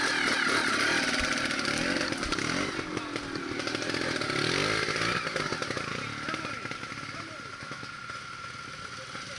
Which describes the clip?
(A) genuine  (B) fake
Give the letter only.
A